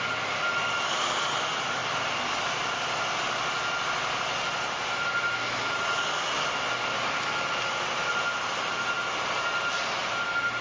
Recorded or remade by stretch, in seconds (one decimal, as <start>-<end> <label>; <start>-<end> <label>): 0.0-1.8 recorded; 1.8-2.5 remade; 2.5-10.6 recorded